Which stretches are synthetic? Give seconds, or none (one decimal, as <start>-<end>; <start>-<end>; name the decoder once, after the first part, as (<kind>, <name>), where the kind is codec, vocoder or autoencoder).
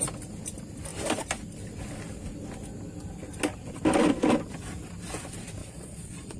5.6-6.4 (vocoder, Vocos)